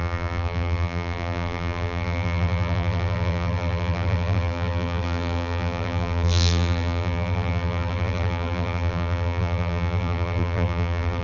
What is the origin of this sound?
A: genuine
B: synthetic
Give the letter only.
B